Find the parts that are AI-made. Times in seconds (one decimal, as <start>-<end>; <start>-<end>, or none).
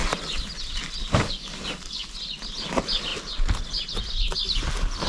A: 1.0-2.1